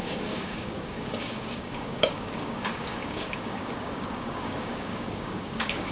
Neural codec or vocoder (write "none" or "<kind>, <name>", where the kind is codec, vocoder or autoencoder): codec, DAC